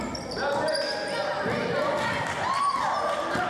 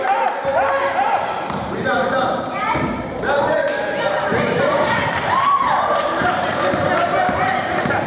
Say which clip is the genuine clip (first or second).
first